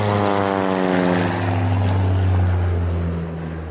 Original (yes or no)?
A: yes